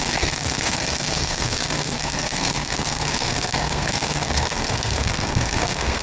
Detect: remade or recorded remade